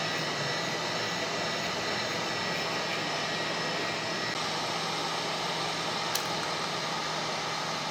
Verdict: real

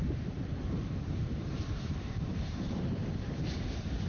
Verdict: fake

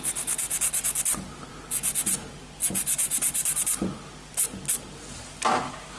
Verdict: real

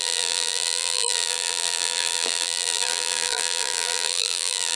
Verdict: fake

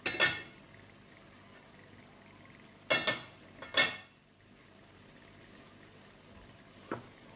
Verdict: real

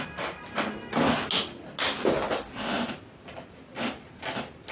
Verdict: real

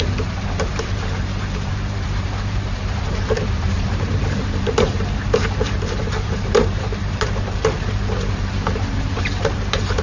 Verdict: fake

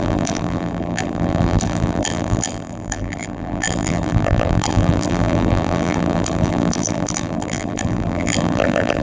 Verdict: fake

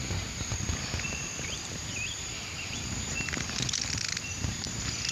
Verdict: fake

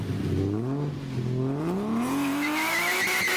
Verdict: real